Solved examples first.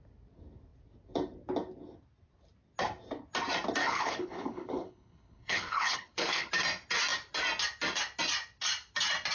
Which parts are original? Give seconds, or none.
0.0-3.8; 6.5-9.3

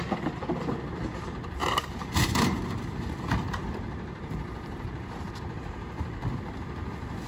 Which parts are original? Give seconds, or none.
0.0-1.6; 5.3-7.3

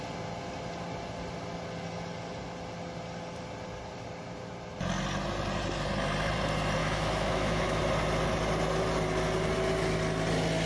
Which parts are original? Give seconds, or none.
0.0-6.8; 7.8-10.7